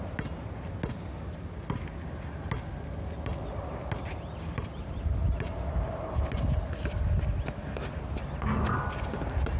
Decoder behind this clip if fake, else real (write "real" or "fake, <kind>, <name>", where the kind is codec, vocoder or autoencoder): real